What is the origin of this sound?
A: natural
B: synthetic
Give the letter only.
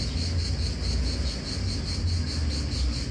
A